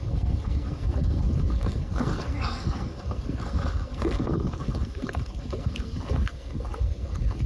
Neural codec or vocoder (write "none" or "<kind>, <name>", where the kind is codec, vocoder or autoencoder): codec, SNAC